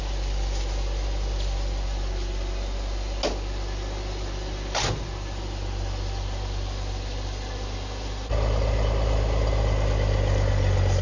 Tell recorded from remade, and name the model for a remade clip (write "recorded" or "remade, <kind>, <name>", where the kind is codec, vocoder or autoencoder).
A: recorded